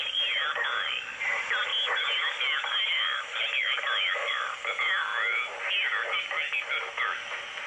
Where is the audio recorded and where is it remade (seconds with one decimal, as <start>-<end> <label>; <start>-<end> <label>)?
0.0-7.7 recorded